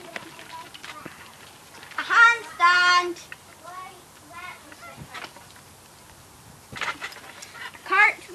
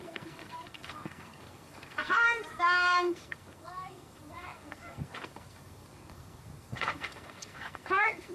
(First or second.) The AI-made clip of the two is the second